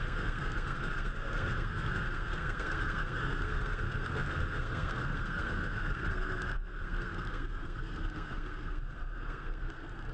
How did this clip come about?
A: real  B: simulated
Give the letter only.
B